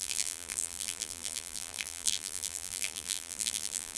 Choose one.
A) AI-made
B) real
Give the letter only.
A